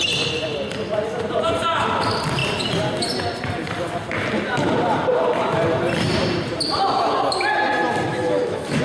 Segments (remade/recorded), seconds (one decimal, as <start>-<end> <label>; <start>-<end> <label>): 0.0-8.1 recorded; 8.1-8.8 remade